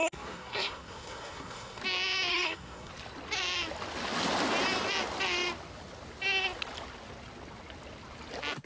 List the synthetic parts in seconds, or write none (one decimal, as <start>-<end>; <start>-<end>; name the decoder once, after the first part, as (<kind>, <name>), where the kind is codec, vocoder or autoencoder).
0.0-1.8 (codec, SNAC); 2.3-2.9